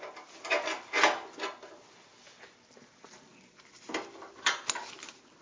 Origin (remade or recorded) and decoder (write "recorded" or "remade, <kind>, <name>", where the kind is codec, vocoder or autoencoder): recorded